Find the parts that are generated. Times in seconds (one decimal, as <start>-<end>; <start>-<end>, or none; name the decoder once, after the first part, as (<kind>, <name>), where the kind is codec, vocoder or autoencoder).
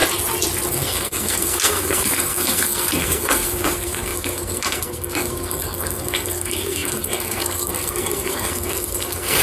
0.7-9.4 (codec, SNAC)